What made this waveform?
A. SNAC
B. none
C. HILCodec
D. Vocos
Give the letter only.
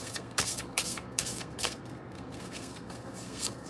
A